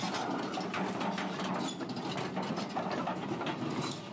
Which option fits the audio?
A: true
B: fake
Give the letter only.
A